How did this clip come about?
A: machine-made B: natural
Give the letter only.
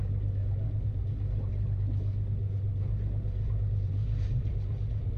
B